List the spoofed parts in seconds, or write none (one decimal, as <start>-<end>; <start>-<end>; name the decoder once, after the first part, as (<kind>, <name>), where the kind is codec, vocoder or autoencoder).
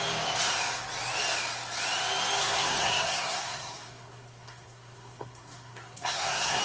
2.4-6.6 (codec, SNAC)